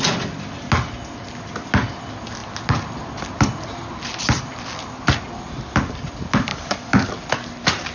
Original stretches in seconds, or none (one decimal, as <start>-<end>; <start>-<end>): 0.0-6.5; 7.1-7.9

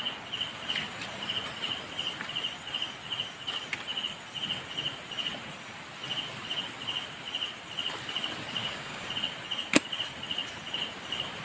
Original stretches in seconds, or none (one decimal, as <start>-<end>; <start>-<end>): 0.0-8.6; 9.1-11.4

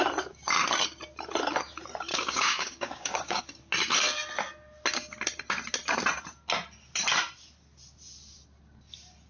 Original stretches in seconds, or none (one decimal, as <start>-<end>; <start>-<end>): 0.0-2.1; 3.4-9.3